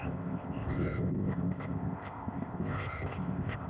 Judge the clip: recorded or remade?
remade